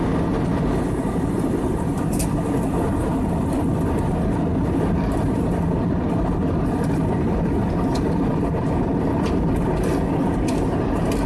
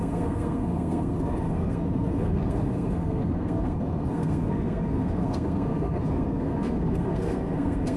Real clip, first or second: first